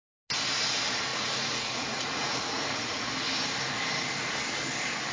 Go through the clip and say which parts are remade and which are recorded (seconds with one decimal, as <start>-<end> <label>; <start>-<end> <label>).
0.0-1.1 recorded; 1.1-3.1 remade; 3.1-5.1 recorded